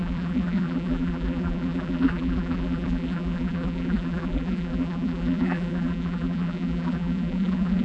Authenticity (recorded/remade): remade